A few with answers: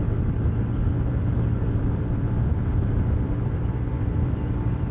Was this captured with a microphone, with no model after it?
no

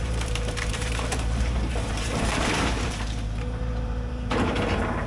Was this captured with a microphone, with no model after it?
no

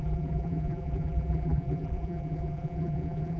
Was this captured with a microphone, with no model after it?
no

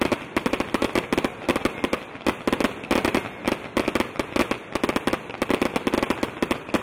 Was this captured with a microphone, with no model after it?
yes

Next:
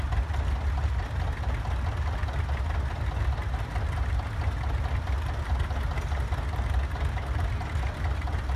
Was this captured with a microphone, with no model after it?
yes